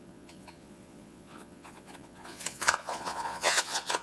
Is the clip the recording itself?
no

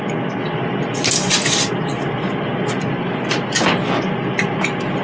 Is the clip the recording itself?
yes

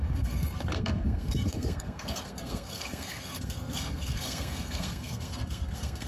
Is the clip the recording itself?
no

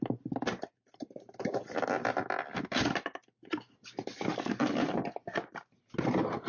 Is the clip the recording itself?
yes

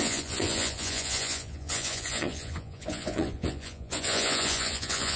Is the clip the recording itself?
no